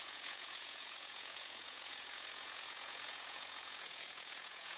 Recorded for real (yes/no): no